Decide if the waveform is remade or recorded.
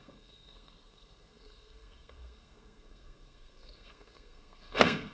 remade